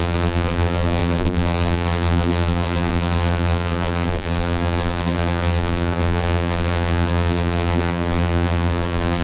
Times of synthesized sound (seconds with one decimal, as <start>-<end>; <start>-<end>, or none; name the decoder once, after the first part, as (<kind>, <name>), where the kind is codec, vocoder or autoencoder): 0.0-9.2 (vocoder, BigVGAN v2)